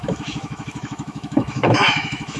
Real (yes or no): no